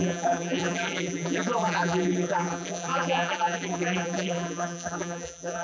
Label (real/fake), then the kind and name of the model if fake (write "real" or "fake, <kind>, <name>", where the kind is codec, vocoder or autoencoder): fake, vocoder, BigVGAN v2